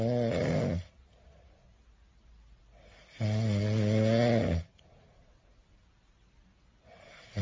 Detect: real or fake real